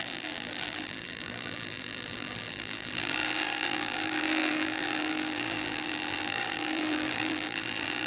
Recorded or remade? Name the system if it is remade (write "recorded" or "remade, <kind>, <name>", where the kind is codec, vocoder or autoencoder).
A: remade, vocoder, BigVGAN v2